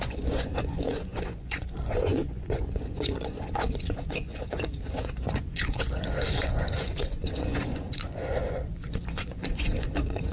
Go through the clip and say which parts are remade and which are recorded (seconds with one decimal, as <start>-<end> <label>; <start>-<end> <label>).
0.0-10.3 remade